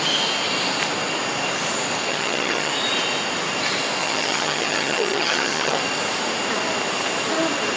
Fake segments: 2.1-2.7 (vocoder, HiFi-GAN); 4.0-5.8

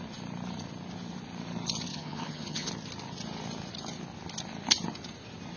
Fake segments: 1.9-2.7 (vocoder, HiFi-GAN)

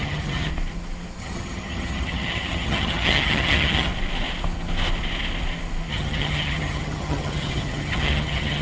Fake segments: 0.0-0.5 (vocoder, HiFi-GAN); 1.2-3.9; 5.9-8.6

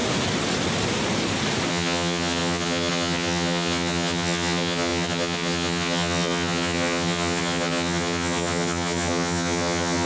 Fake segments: 1.7-10.1 (vocoder, HiFi-GAN)